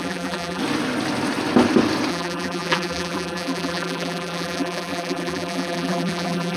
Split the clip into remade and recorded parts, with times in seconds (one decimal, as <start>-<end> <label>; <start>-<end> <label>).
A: 0.0-0.6 remade; 0.6-2.1 recorded; 2.1-6.6 remade